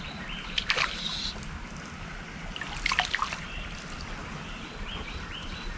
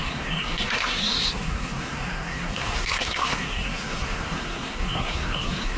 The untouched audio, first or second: first